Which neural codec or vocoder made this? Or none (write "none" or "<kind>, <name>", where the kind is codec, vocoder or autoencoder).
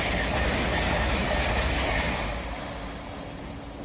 none